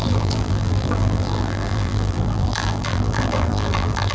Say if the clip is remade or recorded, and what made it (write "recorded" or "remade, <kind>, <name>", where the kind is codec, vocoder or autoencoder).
remade, vocoder, BigVGAN v2